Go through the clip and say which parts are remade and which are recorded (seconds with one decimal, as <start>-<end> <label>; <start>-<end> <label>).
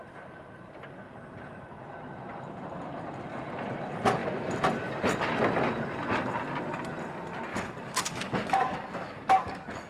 0.0-7.5 recorded; 7.5-9.9 remade